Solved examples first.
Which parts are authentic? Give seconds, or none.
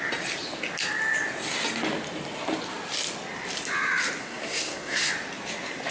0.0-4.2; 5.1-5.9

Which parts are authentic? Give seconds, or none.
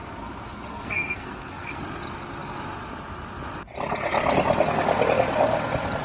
0.0-0.7; 1.8-6.0